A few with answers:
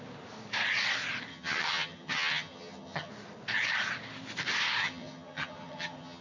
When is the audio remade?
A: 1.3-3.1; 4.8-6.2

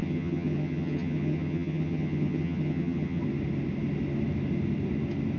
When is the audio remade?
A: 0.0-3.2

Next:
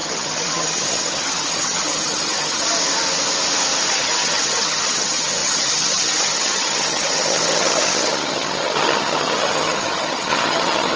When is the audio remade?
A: 0.0-2.7; 3.9-11.0

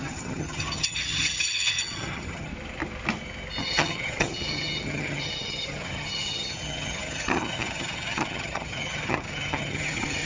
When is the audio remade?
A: 0.0-2.5; 3.6-10.3

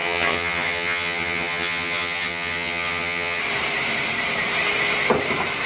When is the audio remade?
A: 0.0-3.4